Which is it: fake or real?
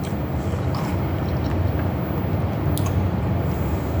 real